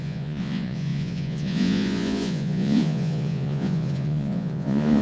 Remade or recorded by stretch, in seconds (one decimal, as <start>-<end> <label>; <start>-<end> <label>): 0.0-5.0 remade